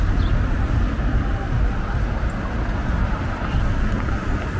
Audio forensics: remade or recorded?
recorded